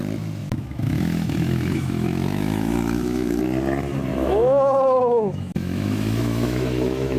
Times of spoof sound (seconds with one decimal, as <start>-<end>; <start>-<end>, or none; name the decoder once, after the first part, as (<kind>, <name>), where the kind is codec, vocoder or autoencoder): 0.4-3.4 (autoencoder, DAC-VAE); 4.1-7.2